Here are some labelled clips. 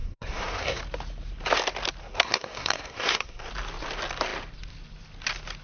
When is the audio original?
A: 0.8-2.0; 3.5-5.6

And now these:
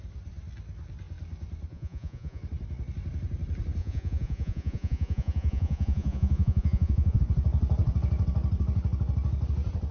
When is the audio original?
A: 0.0-1.7; 2.4-3.8; 7.2-9.9